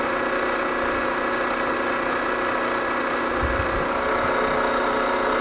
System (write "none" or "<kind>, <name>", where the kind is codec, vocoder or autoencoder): none